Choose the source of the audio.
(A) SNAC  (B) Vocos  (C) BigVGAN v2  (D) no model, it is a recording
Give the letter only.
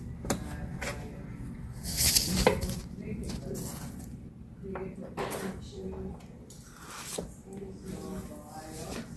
D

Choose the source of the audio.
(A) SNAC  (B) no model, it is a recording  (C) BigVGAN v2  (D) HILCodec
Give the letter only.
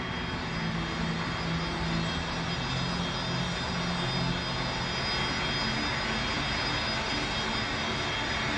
B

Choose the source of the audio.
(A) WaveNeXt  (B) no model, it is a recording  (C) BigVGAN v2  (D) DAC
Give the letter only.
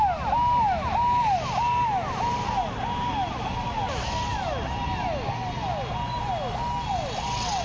B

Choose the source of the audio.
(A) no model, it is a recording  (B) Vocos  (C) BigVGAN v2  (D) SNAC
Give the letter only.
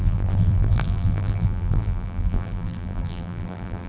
C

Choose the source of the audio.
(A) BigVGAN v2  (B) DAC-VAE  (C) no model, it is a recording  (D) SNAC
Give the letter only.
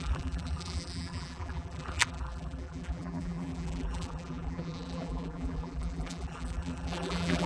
A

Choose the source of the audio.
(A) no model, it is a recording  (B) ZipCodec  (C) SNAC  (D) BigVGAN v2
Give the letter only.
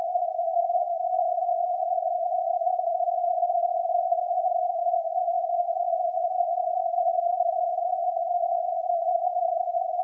D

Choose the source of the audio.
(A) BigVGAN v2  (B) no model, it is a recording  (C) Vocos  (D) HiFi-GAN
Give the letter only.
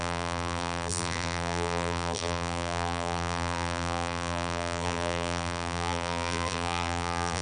A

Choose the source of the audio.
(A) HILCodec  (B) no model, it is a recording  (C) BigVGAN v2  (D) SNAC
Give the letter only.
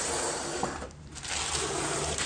C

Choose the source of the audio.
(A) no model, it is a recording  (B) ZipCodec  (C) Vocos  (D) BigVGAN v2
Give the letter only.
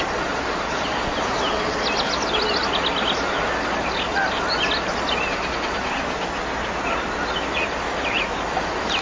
A